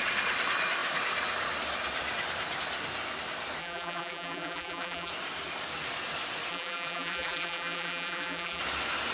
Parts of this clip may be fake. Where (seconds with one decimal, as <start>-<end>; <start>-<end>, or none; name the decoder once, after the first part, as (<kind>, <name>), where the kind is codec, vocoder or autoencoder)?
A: 3.6-5.1 (vocoder, BigVGAN v2); 6.5-8.6

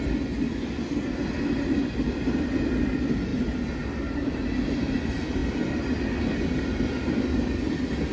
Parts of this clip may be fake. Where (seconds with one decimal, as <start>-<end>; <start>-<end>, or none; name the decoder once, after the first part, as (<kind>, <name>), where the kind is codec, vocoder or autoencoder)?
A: none

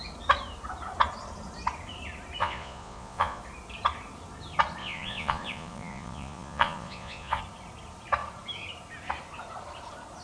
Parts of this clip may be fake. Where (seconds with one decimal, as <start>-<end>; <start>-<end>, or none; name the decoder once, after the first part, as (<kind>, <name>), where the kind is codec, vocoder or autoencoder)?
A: 2.4-3.4 (vocoder, Vocos); 4.8-7.4

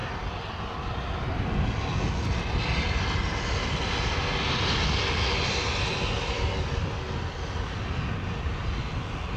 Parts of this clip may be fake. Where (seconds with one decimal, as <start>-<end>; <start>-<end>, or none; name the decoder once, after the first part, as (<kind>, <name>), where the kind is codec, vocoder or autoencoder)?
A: none

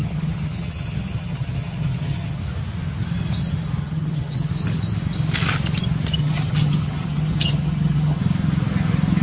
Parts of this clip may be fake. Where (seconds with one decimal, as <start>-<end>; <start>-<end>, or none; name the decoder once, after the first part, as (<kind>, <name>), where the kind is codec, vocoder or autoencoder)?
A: 0.0-2.4 (vocoder, HiFi-GAN); 3.8-4.5; 6.2-8.2

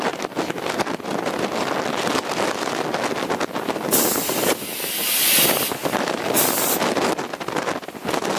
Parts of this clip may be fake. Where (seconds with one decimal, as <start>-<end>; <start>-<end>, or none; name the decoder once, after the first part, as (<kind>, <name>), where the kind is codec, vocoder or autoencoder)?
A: none